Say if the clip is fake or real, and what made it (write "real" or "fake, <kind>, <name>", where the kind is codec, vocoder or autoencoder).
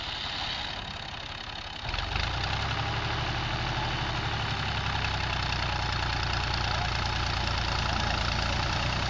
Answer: real